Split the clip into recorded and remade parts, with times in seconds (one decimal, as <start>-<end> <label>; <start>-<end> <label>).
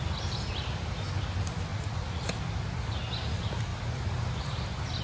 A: 0.0-1.7 recorded; 1.7-2.3 remade; 2.3-5.0 recorded